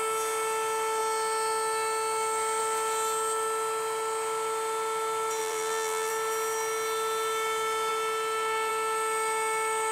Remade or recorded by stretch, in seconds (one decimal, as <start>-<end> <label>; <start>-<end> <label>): 0.0-5.4 recorded; 5.4-6.1 remade; 6.1-9.9 recorded